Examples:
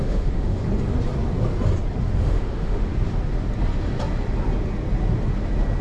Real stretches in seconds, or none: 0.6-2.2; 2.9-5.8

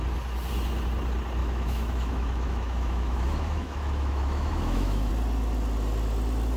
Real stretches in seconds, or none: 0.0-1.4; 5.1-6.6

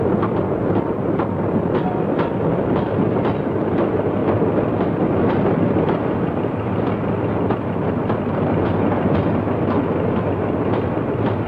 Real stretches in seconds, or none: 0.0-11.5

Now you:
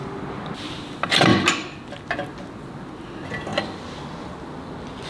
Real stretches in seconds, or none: 0.0-5.1